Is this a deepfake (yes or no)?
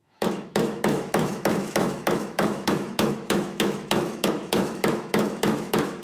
yes